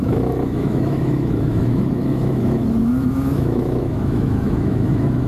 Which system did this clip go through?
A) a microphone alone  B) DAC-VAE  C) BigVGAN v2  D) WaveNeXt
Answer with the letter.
B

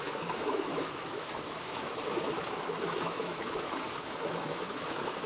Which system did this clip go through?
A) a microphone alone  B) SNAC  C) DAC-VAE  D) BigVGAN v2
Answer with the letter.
C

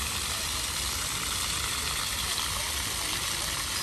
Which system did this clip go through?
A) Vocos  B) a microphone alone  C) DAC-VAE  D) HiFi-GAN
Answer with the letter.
B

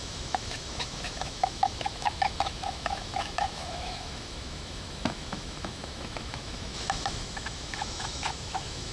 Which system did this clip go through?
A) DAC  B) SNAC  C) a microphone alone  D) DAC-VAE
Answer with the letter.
D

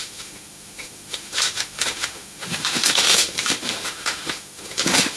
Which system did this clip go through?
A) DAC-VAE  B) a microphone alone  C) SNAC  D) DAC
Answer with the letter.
A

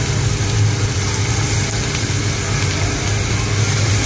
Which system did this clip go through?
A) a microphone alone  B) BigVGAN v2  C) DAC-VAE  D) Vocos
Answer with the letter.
A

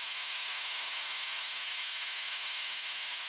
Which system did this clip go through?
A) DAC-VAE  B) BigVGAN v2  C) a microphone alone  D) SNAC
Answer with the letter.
A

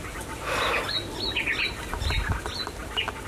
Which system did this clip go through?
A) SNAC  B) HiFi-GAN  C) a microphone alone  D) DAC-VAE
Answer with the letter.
C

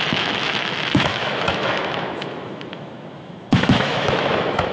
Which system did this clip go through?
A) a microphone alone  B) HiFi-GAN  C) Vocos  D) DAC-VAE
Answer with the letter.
D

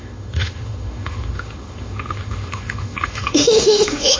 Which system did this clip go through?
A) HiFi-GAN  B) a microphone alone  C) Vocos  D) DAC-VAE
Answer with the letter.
D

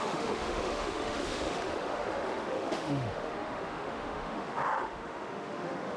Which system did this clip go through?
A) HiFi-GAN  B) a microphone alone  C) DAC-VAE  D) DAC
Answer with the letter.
C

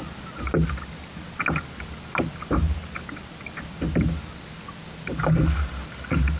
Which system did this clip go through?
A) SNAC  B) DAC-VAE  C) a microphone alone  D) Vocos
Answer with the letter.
C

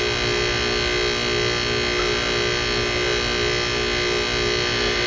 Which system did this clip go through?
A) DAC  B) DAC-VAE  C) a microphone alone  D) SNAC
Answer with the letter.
C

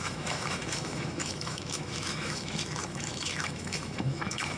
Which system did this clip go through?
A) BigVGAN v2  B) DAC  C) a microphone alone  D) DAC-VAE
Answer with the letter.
D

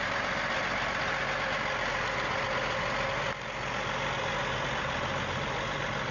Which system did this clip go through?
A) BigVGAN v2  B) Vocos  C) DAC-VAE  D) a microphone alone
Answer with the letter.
D